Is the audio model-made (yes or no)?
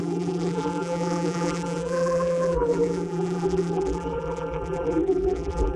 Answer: yes